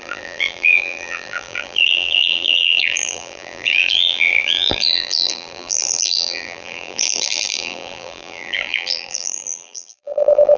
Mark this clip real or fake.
fake